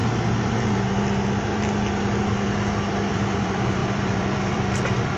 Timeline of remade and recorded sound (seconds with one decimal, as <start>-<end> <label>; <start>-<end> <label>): 0.0-3.1 recorded; 3.1-5.2 remade